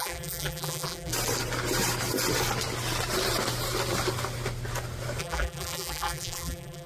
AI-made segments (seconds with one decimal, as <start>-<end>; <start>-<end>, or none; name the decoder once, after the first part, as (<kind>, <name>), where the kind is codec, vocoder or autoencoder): 0.0-1.1 (vocoder, BigVGAN v2); 5.2-6.9